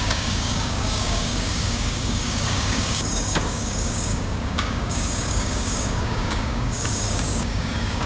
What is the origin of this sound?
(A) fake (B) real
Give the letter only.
A